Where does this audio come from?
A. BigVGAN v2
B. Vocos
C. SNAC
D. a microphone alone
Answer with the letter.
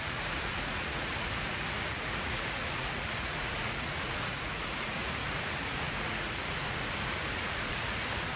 B